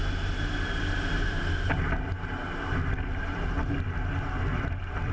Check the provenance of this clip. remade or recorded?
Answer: recorded